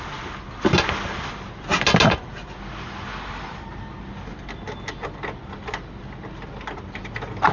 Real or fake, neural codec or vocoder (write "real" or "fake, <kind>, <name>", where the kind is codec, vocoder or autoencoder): real